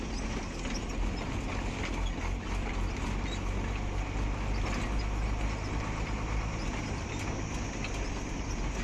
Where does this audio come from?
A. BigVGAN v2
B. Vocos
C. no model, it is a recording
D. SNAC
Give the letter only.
C